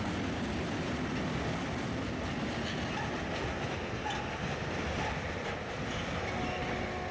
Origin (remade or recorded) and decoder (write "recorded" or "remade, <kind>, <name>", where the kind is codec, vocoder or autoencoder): recorded